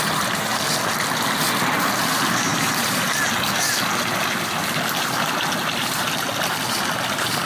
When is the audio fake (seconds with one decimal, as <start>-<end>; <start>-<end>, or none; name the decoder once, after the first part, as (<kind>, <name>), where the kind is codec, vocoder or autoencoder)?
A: none